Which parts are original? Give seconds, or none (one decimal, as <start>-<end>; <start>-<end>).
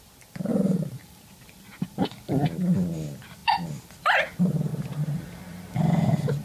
0.0-0.5; 1.2-4.7; 5.7-6.4